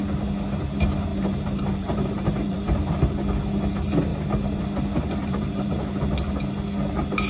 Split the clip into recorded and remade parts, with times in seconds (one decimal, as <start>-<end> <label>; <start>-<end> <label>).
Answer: 0.0-1.1 recorded; 1.1-2.9 remade; 2.9-4.1 recorded; 4.1-4.6 remade; 4.6-5.2 recorded; 5.2-5.8 remade; 5.8-7.3 recorded

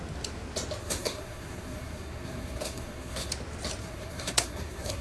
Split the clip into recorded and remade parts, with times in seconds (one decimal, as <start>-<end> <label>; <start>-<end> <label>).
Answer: 0.0-0.8 recorded; 0.8-3.3 remade; 3.3-3.8 recorded; 3.8-5.0 remade